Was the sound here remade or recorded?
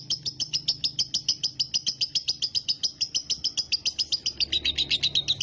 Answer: recorded